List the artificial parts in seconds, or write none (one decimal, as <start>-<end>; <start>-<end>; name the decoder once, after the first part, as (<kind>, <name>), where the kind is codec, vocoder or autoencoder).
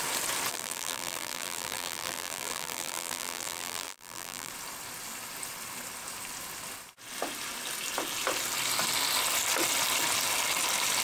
0.5-4.5 (vocoder, BigVGAN v2)